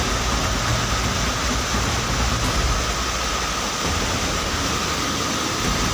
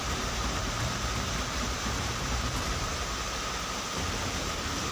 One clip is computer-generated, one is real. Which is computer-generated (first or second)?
second